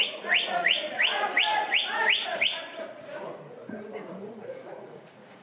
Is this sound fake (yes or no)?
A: yes